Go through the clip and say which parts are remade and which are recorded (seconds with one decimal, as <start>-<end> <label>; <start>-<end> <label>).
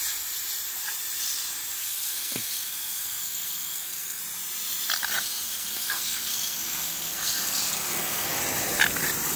0.0-1.8 recorded; 1.8-4.2 remade; 4.2-5.2 recorded; 5.2-8.3 remade; 8.3-9.4 recorded